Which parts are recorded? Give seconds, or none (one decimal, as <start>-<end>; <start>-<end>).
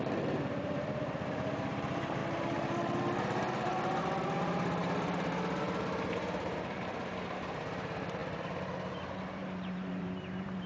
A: 2.2-4.0; 8.2-9.1